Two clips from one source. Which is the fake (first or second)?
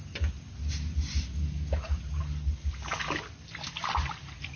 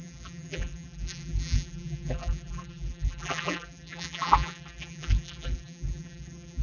second